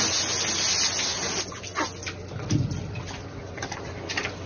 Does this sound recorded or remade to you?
recorded